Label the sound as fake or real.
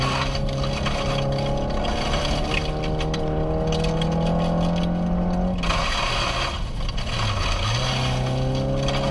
real